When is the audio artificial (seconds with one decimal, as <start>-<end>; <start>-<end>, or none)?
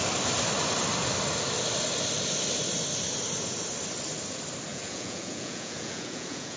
4.7-6.6